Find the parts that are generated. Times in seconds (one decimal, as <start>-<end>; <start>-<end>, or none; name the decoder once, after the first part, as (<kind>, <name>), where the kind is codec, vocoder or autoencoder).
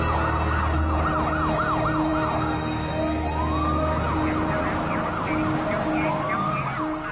none